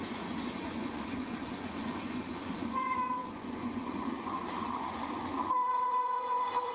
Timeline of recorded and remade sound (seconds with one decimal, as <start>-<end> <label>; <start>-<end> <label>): 0.0-6.7 remade